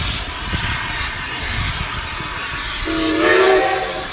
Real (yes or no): yes